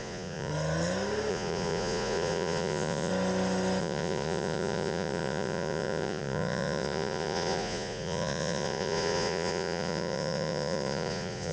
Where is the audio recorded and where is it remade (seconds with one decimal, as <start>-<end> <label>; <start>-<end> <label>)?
0.0-0.5 remade; 0.5-1.3 recorded; 1.3-3.1 remade; 3.1-3.8 recorded; 3.8-11.5 remade